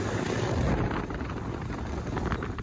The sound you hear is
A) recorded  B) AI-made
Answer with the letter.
A